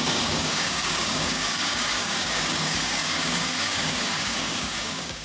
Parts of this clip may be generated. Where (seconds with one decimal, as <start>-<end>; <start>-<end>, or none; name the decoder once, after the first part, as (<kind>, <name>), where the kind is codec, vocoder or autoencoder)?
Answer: 0.0-5.2 (codec, DAC)